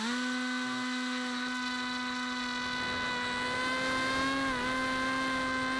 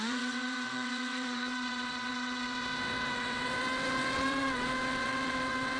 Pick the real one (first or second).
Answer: first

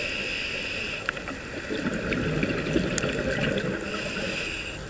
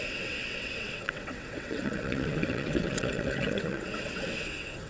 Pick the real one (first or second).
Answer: first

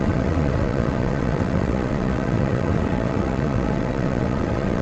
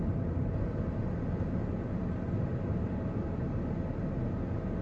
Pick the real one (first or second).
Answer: second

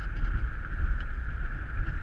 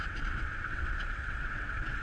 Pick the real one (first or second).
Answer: first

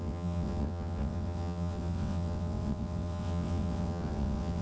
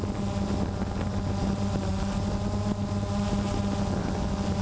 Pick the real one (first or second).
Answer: second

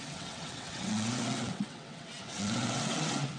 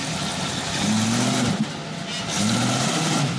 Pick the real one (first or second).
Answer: second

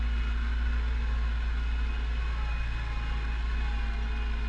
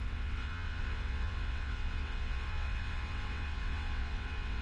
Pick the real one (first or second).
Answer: first